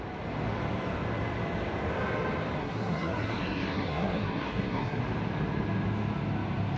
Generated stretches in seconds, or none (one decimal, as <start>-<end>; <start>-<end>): 2.6-5.0